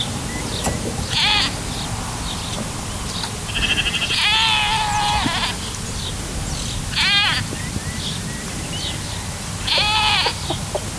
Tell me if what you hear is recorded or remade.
recorded